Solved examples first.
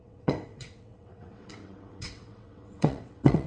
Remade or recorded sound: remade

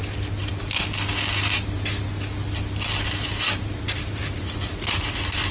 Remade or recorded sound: recorded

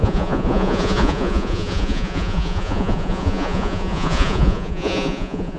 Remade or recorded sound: remade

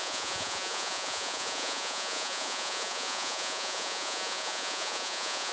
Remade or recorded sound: remade